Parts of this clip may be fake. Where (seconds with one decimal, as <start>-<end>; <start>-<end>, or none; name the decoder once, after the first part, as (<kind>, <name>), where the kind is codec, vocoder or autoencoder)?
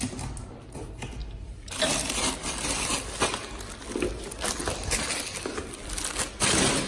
1.2-2.3 (vocoder, BigVGAN v2)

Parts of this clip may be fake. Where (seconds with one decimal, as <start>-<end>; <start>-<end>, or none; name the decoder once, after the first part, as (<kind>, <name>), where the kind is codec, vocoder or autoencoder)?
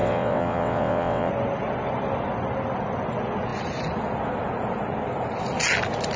0.0-1.3 (vocoder, WaveNeXt)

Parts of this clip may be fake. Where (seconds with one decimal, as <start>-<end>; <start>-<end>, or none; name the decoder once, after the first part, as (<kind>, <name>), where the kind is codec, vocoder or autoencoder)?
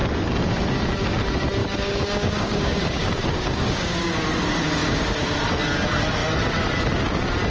1.6-4.1 (codec, DAC)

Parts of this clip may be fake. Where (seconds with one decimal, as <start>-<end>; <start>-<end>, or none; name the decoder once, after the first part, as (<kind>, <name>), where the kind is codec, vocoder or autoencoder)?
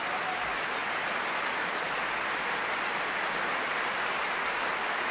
none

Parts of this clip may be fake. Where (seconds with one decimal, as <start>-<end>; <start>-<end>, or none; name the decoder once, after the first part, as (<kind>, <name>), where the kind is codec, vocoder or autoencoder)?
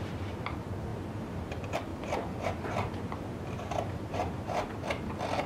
0.9-1.5 (vocoder, BigVGAN v2); 1.9-4.7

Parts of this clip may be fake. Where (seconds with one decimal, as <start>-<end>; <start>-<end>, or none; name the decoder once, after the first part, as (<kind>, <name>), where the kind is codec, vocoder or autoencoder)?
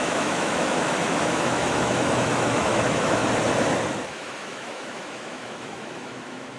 0.0-3.2 (autoencoder, DAC-VAE); 4.0-6.6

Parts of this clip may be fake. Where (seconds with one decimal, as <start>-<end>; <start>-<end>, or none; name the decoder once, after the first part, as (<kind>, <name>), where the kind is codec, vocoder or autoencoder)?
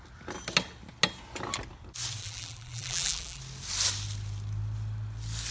2.2-3.4 (vocoder, BigVGAN v2)